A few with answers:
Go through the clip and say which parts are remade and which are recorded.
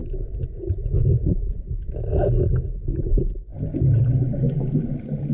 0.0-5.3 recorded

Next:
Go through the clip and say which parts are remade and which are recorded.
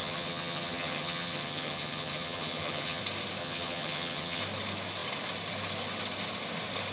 0.0-3.0 remade; 3.0-3.4 recorded; 3.4-4.4 remade; 4.4-6.9 recorded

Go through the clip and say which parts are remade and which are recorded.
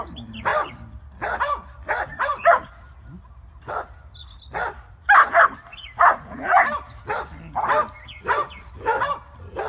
0.0-2.1 recorded; 2.1-2.7 remade; 2.7-5.7 recorded; 5.7-6.6 remade; 6.6-9.7 recorded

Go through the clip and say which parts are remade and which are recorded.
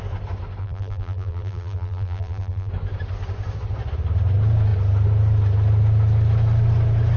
0.0-0.6 recorded; 0.6-2.7 remade; 2.7-7.2 recorded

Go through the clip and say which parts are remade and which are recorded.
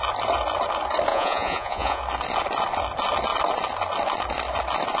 0.0-1.1 recorded; 1.1-2.0 remade; 2.0-5.0 recorded